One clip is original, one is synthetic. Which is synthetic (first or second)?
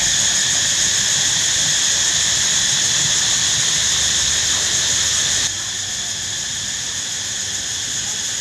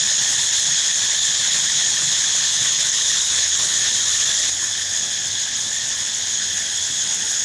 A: second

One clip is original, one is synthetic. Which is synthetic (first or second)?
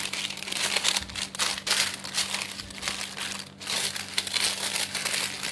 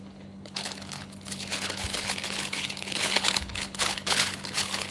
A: second